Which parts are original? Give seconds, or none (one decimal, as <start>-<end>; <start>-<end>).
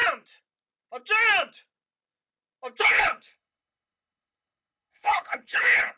0.0-2.8